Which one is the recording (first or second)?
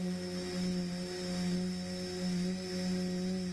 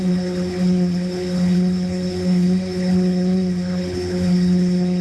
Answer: first